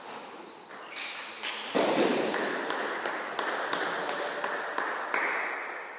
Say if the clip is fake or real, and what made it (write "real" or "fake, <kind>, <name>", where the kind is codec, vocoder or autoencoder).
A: real